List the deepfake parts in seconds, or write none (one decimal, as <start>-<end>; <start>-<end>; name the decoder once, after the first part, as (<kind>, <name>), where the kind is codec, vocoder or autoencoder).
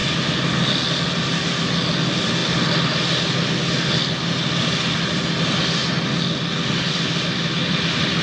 none